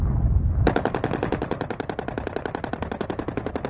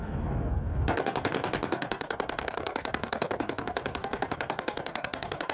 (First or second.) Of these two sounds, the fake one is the second